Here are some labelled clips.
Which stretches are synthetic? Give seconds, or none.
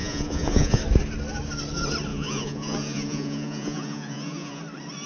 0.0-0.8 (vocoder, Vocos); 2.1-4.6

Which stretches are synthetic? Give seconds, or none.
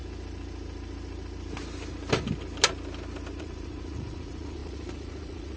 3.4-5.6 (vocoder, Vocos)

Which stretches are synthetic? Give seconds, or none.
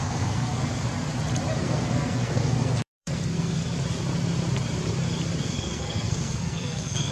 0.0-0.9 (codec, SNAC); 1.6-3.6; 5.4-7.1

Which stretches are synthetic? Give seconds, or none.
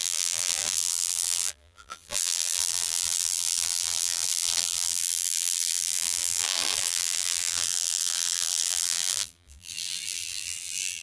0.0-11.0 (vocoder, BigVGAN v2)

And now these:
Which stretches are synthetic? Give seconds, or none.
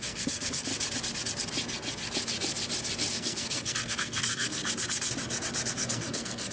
0.0-0.7 (codec, SNAC); 3.1-4.6; 5.7-6.5